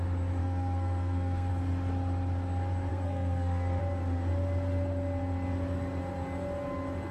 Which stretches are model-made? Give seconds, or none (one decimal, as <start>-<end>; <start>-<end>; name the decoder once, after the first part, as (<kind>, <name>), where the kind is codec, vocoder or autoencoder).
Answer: 0.4-1.5 (codec, SNAC); 2.9-3.8